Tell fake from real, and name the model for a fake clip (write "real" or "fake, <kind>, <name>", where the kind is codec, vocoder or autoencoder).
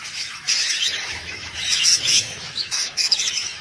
fake, autoencoder, DAC-VAE